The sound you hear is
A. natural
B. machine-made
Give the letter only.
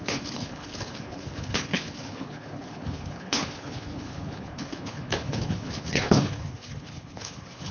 B